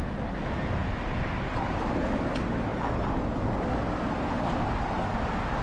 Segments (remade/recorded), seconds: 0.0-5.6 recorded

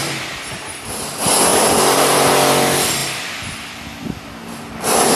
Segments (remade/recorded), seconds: 0.0-0.5 remade; 0.5-1.5 recorded; 1.5-2.3 remade; 2.3-3.0 recorded; 3.0-5.1 remade

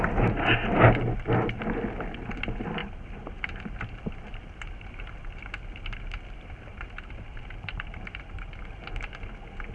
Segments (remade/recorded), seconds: 0.0-2.8 recorded; 2.8-3.6 remade; 3.6-6.7 recorded; 6.7-8.6 remade; 8.6-9.7 recorded

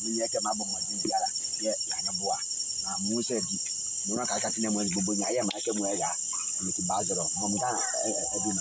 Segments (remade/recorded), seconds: 0.0-8.6 recorded

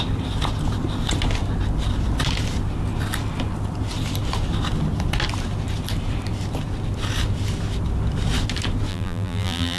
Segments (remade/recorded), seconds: 0.0-8.9 recorded; 8.9-9.8 remade

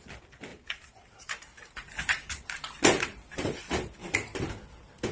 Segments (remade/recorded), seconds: 0.0-0.5 recorded; 0.5-3.6 remade; 3.6-5.1 recorded

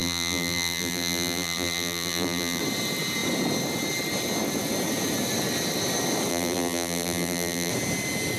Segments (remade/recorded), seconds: 0.0-2.6 remade; 2.6-6.3 recorded; 6.3-7.7 remade; 7.7-8.4 recorded

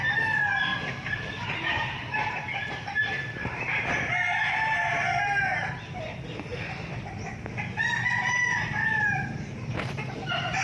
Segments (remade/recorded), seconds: 0.0-0.7 recorded; 0.7-4.3 remade; 4.3-8.8 recorded; 8.8-10.6 remade